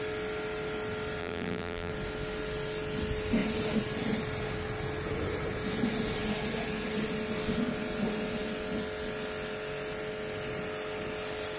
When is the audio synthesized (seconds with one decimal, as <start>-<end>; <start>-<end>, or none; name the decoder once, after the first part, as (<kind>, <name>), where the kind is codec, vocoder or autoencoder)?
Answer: 1.2-1.9 (vocoder, BigVGAN v2)